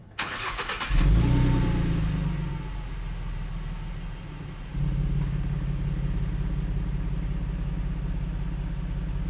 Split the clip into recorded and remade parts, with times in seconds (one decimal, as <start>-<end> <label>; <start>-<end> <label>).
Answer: 0.0-0.6 remade; 0.6-9.3 recorded

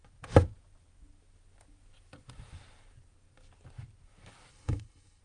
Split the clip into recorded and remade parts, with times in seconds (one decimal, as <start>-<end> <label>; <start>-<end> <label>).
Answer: 0.0-4.5 recorded; 4.5-5.2 remade

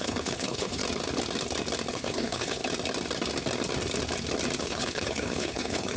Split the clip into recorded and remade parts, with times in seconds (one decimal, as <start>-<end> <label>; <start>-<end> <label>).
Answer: 0.0-0.8 remade; 0.8-1.9 recorded; 1.9-2.6 remade; 2.6-4.6 recorded; 4.6-6.0 remade

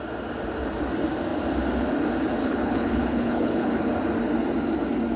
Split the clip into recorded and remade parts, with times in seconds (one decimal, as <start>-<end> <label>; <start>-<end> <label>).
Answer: 0.0-2.4 recorded; 2.4-3.7 remade; 3.7-5.2 recorded